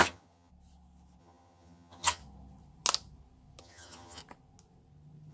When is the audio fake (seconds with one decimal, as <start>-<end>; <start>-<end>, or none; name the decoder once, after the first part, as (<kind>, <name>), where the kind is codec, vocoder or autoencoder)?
0.0-0.5 (vocoder, HiFi-GAN); 1.2-2.2; 3.6-4.2